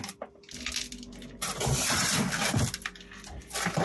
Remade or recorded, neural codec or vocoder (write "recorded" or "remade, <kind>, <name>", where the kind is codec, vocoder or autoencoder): recorded